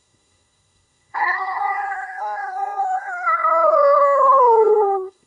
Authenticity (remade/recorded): remade